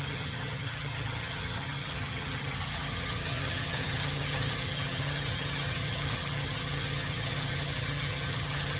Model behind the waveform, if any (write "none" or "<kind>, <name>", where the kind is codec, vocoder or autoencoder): vocoder, HiFi-GAN